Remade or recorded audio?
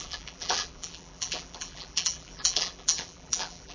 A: remade